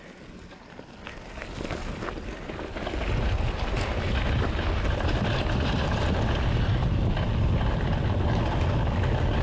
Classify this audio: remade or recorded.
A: recorded